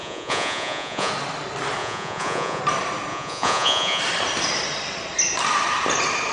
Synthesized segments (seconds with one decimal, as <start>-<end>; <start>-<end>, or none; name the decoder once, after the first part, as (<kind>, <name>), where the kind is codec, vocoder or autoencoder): 0.0-1.1 (vocoder, Vocos); 1.8-2.6; 3.1-4.0